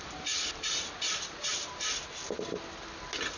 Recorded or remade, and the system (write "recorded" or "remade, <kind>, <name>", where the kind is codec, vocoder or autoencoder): recorded